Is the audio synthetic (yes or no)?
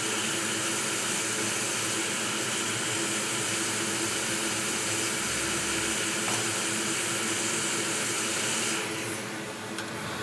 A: no